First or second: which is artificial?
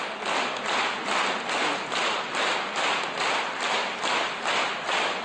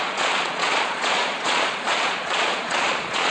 second